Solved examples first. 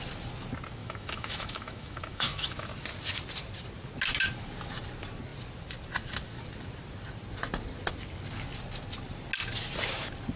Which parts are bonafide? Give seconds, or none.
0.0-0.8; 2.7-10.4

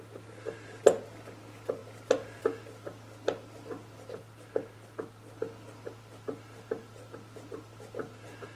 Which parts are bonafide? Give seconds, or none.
0.0-8.6

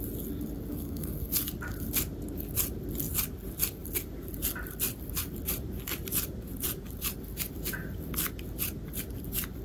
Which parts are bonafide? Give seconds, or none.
0.0-0.7; 1.4-9.6

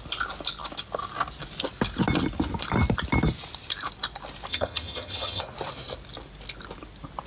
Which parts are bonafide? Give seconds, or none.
0.0-4.5; 5.4-7.3